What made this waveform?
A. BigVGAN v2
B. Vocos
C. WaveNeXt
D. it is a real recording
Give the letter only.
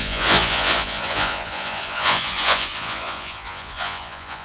B